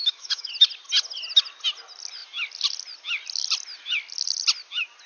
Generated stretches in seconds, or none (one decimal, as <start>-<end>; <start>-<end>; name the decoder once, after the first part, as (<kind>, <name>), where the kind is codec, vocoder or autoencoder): 0.0-0.5 (autoencoder, DAC-VAE)